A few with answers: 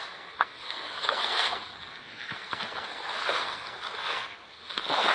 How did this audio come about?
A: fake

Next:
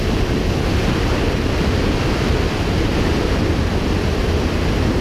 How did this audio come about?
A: real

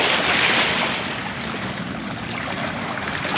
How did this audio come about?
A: real